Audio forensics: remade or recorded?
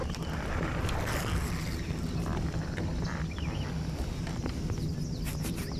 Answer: recorded